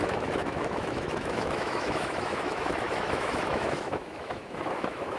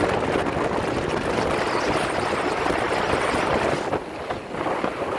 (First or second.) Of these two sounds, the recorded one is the second